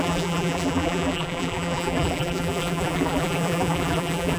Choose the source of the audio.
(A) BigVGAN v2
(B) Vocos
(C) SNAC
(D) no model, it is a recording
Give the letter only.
A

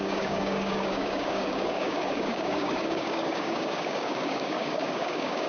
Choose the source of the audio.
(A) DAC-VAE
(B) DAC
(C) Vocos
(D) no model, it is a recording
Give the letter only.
B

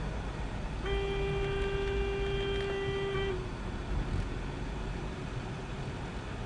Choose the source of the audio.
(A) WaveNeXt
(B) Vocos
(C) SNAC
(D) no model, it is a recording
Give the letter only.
D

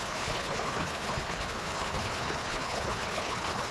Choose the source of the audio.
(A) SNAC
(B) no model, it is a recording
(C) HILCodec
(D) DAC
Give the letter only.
C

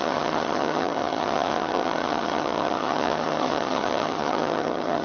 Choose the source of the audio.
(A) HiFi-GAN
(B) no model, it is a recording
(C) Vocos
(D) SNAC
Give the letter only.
A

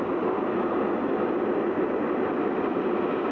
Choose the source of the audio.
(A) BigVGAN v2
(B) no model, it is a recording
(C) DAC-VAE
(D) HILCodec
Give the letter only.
B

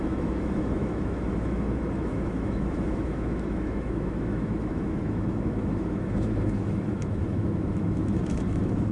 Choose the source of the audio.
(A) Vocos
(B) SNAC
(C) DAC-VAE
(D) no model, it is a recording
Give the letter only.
C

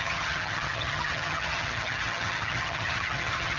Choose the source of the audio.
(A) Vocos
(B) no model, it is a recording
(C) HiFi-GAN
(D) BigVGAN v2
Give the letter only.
C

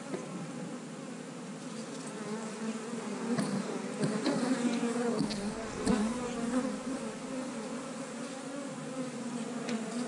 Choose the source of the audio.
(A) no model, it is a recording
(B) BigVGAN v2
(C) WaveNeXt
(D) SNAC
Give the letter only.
A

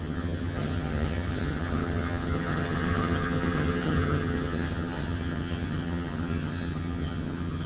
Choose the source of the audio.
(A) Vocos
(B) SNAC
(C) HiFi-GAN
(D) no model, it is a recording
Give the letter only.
C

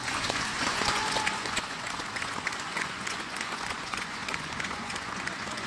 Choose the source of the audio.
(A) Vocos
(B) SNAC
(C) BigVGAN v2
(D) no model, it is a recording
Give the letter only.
A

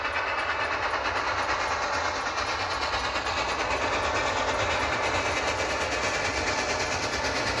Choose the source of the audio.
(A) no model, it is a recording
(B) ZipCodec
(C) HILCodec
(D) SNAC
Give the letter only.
A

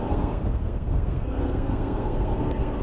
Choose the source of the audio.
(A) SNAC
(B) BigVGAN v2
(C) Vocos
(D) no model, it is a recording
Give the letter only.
A